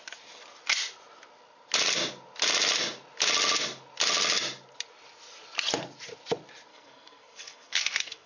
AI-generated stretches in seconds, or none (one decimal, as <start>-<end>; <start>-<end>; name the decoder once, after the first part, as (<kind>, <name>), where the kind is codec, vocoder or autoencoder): 6.7-8.3 (codec, SNAC)